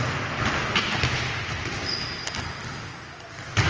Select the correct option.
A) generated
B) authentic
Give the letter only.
B